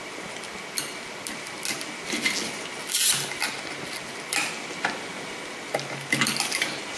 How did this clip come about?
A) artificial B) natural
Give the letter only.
B